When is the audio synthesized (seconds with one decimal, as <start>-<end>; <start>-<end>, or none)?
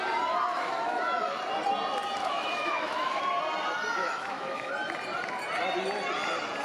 0.5-1.4; 2.2-3.2; 4.0-4.7